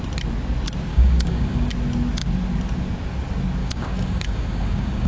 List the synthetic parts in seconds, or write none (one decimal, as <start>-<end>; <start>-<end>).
0.9-1.7; 3.6-5.1